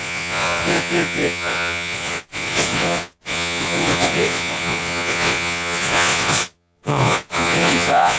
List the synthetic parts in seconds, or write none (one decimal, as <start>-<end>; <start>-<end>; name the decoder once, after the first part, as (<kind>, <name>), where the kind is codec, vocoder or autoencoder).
0.0-8.2 (vocoder, Vocos)